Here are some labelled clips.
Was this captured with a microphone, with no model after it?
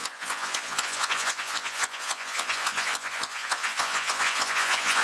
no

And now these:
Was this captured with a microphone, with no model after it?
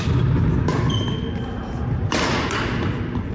yes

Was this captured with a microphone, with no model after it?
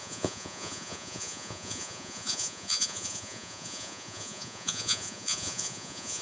no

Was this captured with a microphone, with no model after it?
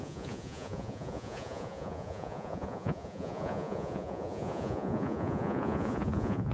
no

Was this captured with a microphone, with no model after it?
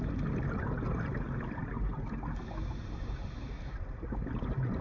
yes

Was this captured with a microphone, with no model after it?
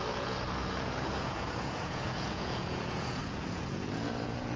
no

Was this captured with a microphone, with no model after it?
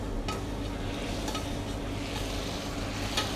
yes